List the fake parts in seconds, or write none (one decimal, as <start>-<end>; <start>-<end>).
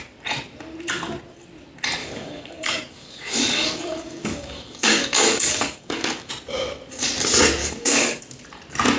2.0-6.3; 7.6-8.2